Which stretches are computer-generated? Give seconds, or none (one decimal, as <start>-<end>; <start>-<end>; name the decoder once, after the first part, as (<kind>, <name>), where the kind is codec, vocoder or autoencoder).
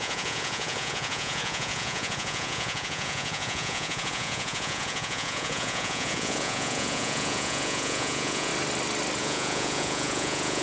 0.0-8.5 (vocoder, Vocos); 9.2-10.6